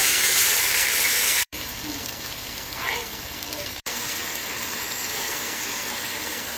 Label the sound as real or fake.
fake